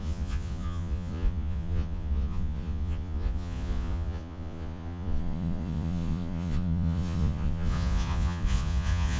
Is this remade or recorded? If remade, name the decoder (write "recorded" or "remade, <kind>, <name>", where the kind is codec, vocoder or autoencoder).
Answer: remade, vocoder, Vocos